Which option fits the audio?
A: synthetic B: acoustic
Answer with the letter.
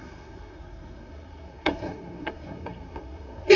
A